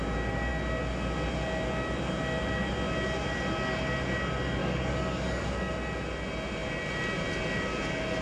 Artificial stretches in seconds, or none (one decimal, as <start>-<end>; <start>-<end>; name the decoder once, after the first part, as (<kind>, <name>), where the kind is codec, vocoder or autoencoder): 4.6-5.7 (codec, DAC)